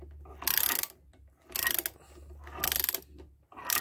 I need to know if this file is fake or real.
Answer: real